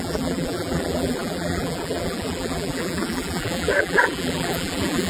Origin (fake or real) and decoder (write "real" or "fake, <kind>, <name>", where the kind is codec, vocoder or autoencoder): fake, vocoder, BigVGAN v2